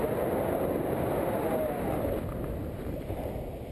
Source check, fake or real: real